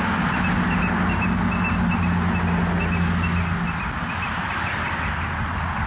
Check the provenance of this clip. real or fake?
real